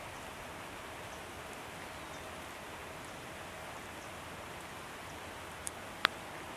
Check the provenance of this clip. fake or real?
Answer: real